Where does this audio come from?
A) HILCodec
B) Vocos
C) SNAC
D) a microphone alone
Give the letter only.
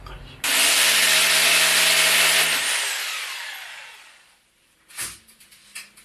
D